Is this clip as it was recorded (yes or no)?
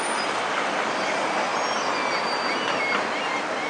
yes